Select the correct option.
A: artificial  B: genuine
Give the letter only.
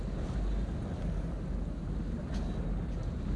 B